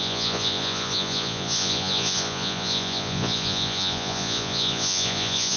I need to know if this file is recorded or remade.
remade